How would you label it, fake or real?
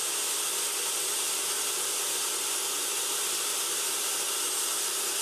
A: real